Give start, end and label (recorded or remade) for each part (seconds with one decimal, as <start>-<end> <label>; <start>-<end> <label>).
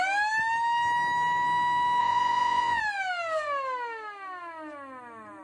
0.0-2.0 recorded; 2.0-2.8 remade; 2.8-5.4 recorded